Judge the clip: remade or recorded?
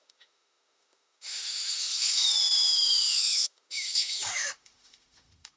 remade